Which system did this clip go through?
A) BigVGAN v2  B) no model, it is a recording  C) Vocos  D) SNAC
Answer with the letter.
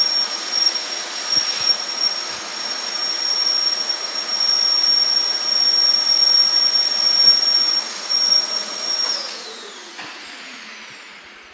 C